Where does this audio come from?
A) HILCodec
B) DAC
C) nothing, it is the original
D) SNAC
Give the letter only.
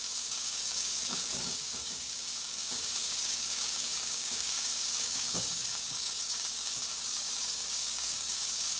B